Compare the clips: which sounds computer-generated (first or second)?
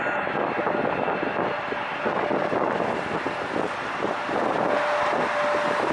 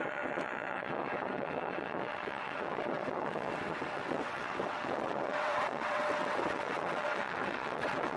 second